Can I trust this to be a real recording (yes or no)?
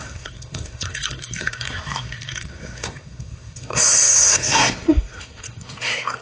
no